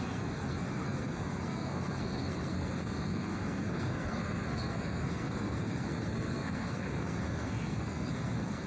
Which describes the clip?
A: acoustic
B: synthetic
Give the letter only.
B